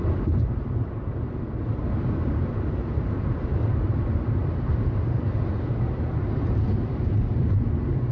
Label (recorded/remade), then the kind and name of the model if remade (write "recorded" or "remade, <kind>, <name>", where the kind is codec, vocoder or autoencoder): remade, vocoder, BigVGAN v2